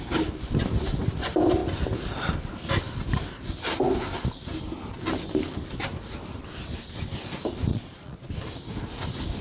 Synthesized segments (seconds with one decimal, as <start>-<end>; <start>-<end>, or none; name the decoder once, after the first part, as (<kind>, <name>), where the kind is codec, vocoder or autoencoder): 7.7-8.3 (vocoder, Vocos)